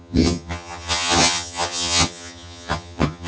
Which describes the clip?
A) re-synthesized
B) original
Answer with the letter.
A